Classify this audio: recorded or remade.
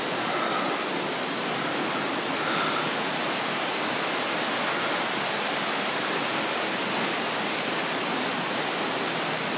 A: recorded